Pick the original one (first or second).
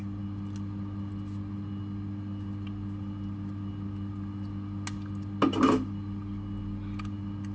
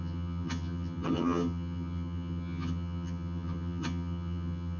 first